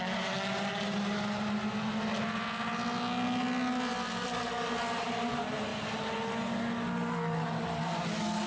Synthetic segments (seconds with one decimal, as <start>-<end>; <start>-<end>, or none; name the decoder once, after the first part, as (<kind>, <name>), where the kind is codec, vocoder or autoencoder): none